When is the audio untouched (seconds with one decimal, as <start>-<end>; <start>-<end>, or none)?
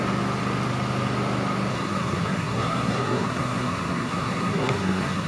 0.0-1.7